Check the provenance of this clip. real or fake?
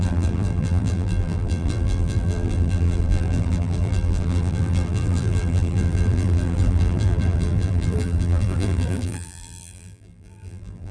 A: fake